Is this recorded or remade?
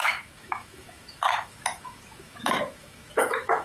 remade